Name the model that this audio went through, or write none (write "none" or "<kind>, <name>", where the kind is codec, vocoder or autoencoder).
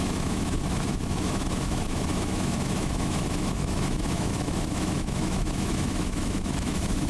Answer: autoencoder, DAC-VAE